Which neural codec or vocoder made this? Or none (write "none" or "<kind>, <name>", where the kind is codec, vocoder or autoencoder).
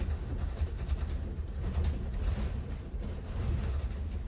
none